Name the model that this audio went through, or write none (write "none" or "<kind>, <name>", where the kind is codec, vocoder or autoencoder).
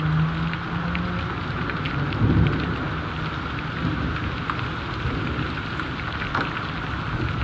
none